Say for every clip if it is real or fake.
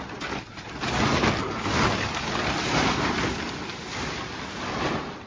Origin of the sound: real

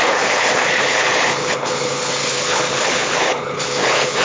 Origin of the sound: fake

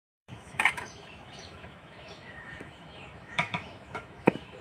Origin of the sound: fake